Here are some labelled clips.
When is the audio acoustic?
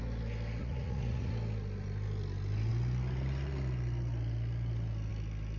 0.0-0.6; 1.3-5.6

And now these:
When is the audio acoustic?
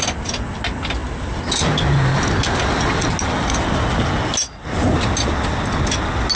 0.0-6.4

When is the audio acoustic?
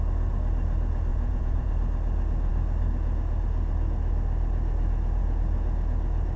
0.0-1.1; 1.7-6.4